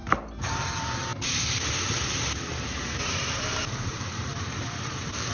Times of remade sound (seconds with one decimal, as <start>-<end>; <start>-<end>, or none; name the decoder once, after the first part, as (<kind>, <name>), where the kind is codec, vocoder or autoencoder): 0.0-5.3 (vocoder, BigVGAN v2)